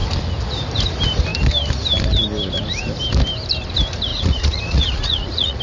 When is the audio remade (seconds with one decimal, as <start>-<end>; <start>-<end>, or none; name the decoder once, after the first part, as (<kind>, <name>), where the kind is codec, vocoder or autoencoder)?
4.1-5.6 (vocoder, Vocos)